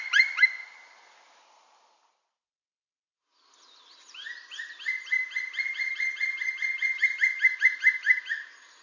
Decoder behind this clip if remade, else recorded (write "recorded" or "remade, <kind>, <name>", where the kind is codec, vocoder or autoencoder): recorded